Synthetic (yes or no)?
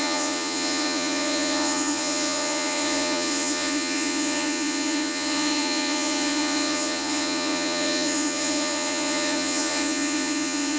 yes